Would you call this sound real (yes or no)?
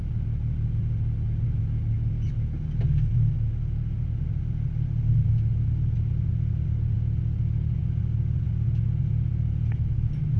yes